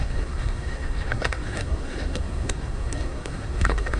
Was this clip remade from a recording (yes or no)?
yes